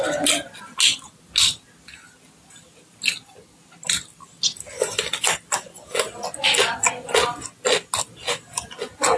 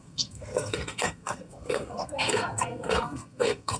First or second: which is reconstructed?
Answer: second